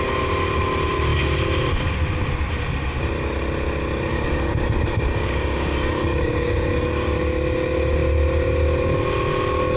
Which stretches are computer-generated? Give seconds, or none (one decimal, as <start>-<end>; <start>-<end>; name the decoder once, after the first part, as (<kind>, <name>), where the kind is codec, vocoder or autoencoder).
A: 4.1-6.9 (codec, DAC)